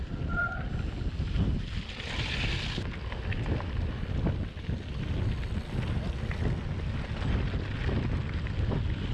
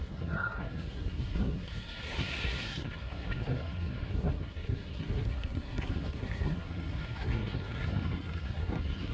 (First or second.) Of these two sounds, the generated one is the second